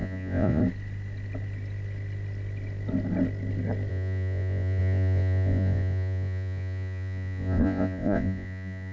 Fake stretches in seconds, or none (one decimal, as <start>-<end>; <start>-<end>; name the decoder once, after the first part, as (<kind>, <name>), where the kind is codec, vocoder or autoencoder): 0.0-0.6 (vocoder, Vocos); 3.9-8.9